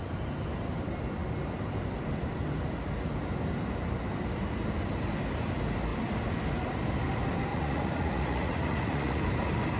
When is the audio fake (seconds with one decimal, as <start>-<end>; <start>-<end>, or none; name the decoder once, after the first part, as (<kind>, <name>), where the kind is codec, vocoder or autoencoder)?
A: 7.5-9.2 (vocoder, Vocos)